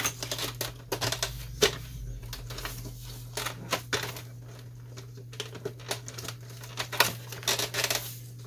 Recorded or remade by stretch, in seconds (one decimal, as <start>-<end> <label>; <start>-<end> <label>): 0.0-8.5 recorded